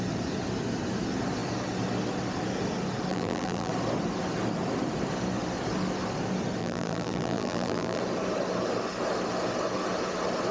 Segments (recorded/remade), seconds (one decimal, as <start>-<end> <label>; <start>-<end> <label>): 0.0-3.1 recorded; 3.1-3.7 remade; 3.7-6.6 recorded; 6.6-8.0 remade; 8.0-10.5 recorded